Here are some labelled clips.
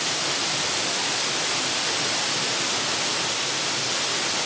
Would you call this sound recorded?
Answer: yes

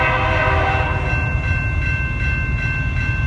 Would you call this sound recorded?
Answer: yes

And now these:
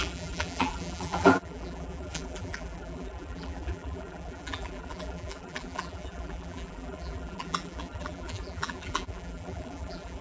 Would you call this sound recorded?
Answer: no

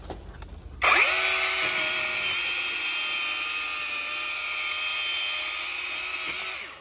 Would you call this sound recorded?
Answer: yes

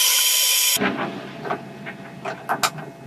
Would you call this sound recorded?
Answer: yes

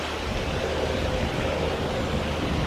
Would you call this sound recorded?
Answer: yes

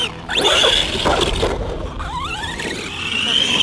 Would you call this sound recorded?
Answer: yes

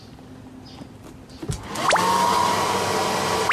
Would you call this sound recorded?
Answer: yes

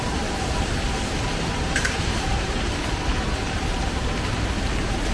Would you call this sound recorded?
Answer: no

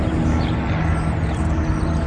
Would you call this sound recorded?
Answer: yes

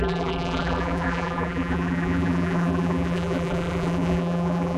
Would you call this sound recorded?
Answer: no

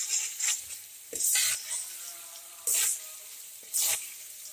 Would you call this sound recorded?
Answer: yes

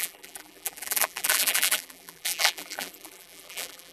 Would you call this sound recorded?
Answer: no